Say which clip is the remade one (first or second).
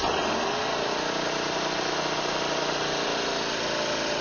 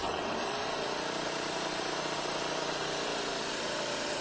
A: second